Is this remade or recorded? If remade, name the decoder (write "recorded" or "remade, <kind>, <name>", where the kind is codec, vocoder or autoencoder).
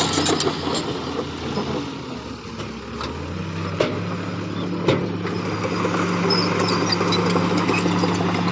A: recorded